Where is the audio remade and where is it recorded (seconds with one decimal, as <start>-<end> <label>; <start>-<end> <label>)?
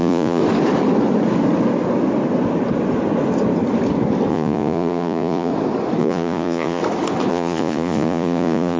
0.0-0.4 remade; 0.4-4.3 recorded; 4.3-5.5 remade; 5.5-6.0 recorded; 6.0-6.8 remade; 6.8-7.3 recorded; 7.3-8.8 remade